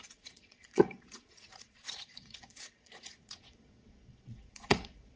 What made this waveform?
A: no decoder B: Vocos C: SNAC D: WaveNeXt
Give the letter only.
B